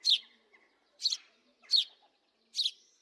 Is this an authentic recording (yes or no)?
yes